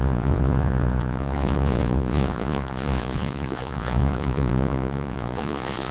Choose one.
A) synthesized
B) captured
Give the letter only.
A